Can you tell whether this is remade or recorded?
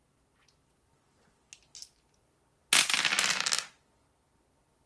recorded